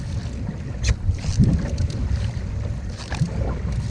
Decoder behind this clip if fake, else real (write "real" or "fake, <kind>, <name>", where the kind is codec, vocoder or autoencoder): fake, vocoder, BigVGAN v2